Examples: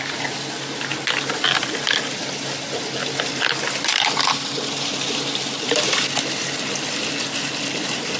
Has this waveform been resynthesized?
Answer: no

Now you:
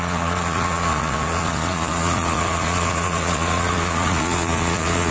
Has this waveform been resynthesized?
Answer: yes